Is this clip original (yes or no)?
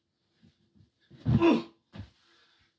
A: yes